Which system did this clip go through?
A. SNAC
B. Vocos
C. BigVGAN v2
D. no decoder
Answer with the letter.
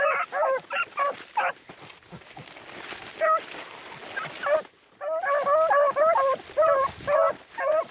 D